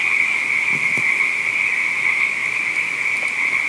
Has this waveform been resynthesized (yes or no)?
no